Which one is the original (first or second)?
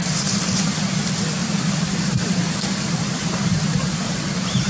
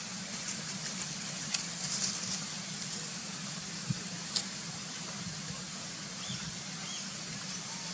second